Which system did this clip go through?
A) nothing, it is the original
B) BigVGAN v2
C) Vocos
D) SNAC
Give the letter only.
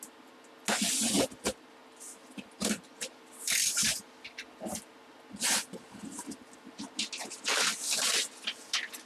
A